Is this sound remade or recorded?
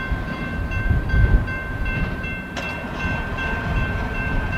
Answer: remade